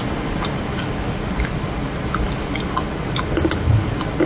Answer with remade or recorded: recorded